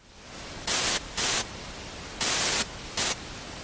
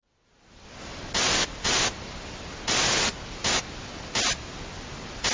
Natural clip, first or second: second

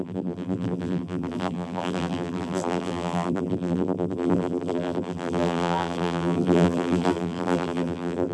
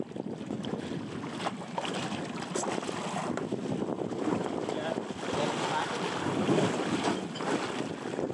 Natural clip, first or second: second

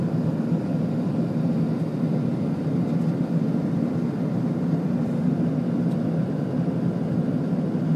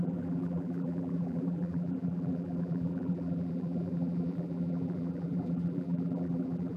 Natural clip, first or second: first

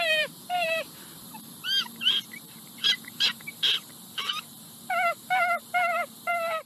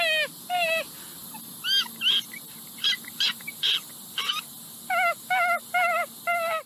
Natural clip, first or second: second